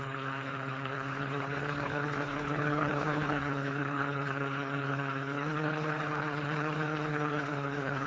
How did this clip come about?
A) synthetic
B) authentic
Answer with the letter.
A